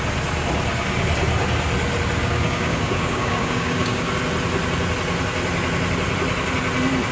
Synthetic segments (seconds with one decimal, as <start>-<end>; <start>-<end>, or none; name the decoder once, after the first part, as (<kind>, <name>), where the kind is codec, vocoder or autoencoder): 2.2-4.1 (codec, DAC)